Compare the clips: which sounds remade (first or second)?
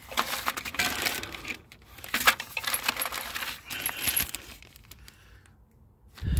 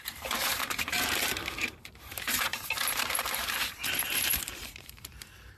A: second